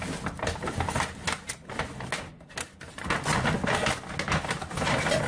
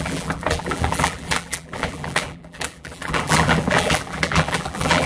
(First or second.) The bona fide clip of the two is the first